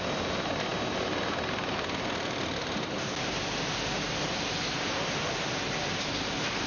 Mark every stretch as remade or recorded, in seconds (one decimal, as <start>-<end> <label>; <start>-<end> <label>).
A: 0.0-6.7 recorded